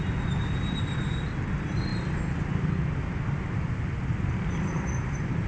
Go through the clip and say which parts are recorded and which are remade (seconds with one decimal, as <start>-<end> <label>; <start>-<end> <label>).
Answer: 0.0-5.5 recorded